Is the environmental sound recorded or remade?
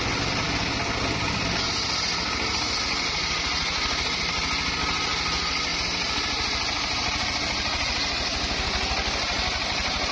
recorded